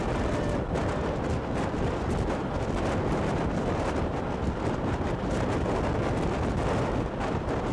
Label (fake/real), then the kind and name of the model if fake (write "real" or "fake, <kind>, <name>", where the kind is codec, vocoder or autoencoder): real